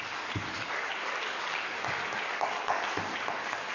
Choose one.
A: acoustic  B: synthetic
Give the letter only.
B